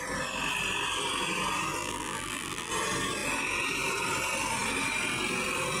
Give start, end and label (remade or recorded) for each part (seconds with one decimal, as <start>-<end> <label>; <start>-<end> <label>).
0.0-1.8 recorded; 1.8-2.7 remade; 2.7-5.8 recorded